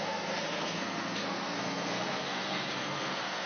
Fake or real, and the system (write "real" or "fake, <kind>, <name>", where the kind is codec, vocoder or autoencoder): fake, codec, SNAC